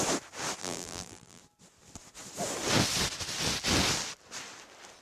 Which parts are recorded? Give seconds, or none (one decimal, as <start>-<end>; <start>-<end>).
0.0-0.6; 1.4-5.0